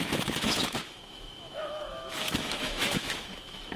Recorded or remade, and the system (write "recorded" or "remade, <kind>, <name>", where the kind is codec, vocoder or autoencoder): remade, autoencoder, DAC-VAE